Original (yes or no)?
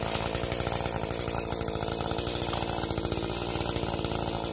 yes